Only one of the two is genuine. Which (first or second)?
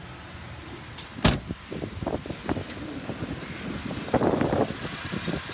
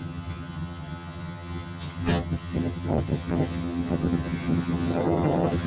first